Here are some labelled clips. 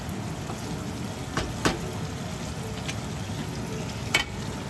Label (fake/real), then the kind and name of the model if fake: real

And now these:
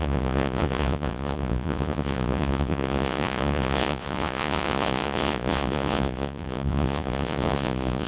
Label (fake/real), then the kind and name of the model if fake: fake, vocoder, Vocos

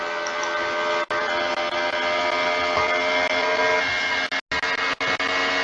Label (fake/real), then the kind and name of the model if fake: real